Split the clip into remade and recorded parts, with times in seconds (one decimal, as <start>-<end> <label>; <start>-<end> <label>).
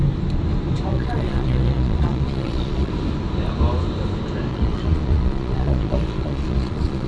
0.0-0.9 recorded; 0.9-2.9 remade; 2.9-4.5 recorded; 4.5-7.1 remade